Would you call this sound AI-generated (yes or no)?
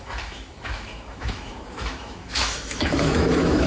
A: yes